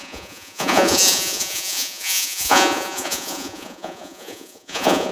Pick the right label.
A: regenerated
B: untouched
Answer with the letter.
A